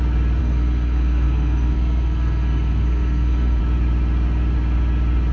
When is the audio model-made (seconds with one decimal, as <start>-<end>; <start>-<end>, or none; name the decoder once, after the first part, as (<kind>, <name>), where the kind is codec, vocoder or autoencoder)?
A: 0.4-3.6 (codec, SNAC)